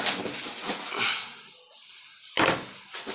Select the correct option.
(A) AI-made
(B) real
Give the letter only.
B